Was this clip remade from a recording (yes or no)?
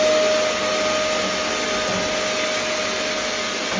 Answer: no